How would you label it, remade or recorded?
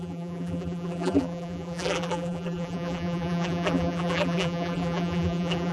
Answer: remade